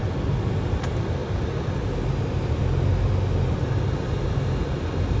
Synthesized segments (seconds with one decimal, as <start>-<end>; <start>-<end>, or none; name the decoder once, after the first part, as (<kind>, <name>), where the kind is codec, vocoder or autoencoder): none